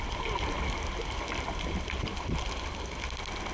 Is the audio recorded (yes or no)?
yes